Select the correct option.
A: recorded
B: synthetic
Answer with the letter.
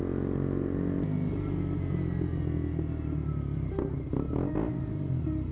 A